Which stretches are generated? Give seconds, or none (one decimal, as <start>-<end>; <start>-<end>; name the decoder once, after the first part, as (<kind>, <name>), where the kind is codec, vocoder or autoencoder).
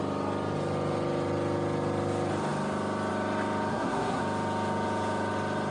3.7-4.2 (codec, SNAC)